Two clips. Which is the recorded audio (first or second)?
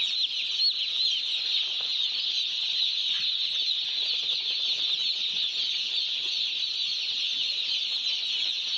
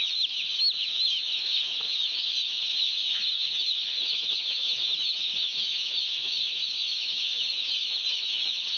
first